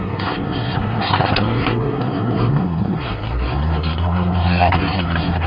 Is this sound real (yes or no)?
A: no